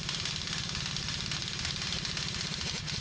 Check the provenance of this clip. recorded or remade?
recorded